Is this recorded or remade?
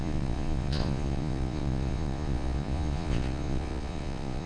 remade